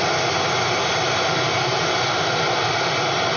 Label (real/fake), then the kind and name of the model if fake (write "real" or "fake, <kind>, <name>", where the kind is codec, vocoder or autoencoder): real